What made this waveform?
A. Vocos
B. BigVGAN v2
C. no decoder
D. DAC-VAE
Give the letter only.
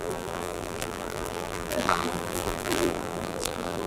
B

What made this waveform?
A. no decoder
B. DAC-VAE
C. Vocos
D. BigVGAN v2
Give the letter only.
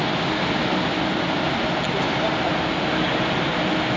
A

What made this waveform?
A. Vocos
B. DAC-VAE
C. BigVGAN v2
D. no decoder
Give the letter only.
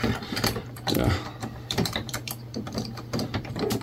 C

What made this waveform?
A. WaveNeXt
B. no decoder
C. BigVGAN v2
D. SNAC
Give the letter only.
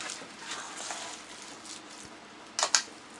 B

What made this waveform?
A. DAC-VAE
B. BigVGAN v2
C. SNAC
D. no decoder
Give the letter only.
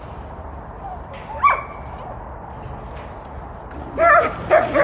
D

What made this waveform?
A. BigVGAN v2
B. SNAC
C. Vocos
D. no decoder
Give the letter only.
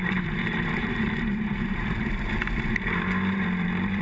A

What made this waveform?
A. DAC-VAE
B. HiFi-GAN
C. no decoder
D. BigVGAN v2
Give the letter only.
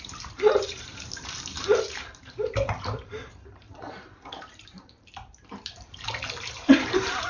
D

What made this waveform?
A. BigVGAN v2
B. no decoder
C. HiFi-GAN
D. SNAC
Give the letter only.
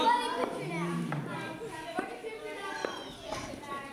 B